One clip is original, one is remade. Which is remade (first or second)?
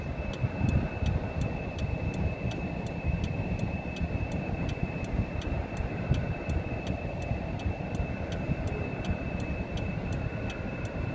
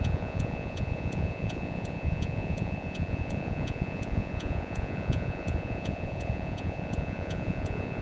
second